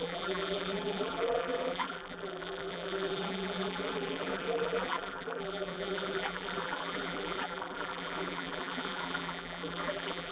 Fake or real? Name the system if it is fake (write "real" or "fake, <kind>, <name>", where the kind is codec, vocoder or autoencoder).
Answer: fake, vocoder, BigVGAN v2